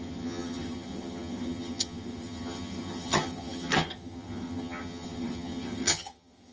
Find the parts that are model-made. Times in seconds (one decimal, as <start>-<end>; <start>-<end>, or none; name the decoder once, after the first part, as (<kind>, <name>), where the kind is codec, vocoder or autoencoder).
0.0-6.5 (vocoder, HiFi-GAN)